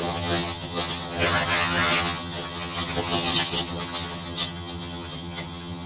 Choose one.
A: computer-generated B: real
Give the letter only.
A